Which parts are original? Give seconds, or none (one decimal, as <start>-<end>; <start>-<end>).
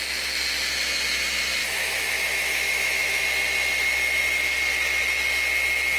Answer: 0.0-1.6; 3.2-6.0